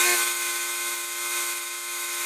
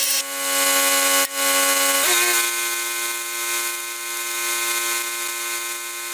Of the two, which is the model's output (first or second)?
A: first